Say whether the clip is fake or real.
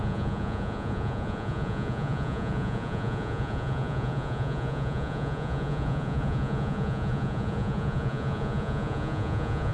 fake